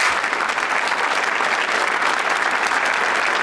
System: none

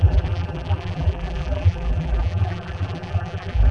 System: vocoder, BigVGAN v2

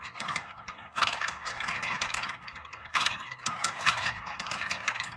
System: codec, SNAC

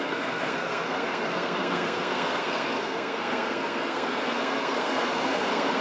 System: codec, SNAC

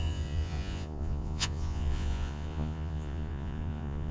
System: vocoder, Vocos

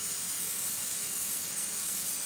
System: codec, SNAC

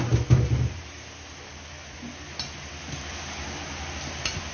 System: none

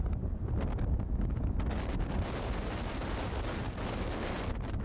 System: none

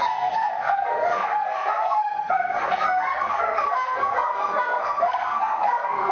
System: codec, SNAC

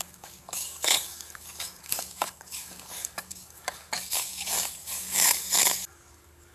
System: codec, DAC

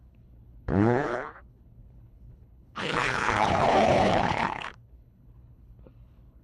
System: codec, HILCodec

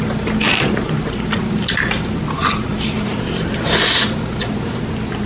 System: vocoder, BigVGAN v2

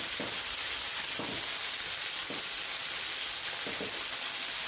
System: none